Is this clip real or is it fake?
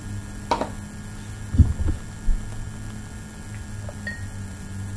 real